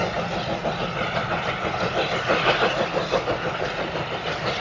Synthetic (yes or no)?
no